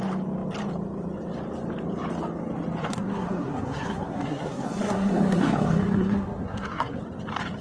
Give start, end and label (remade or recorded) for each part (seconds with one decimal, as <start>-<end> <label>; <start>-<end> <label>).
0.0-2.8 recorded; 2.8-7.0 remade; 7.0-7.6 recorded